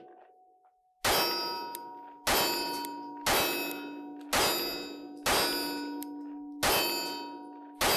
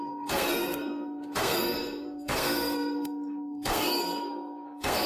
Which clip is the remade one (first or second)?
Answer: second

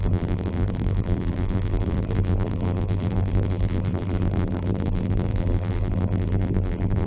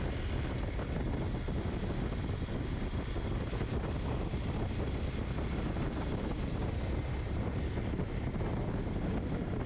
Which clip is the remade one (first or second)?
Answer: first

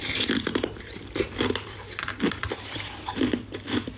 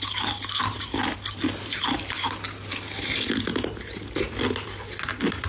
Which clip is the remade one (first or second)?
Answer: first